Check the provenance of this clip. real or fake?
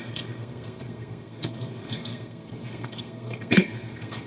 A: fake